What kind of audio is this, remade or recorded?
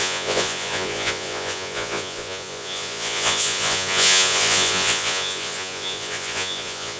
remade